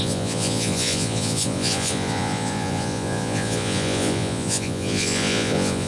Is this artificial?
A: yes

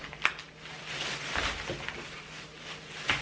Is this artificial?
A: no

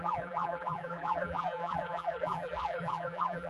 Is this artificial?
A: yes